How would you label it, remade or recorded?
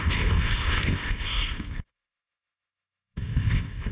remade